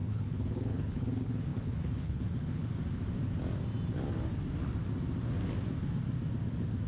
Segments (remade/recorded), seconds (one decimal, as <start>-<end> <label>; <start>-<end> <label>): 0.0-2.7 remade; 2.7-6.9 recorded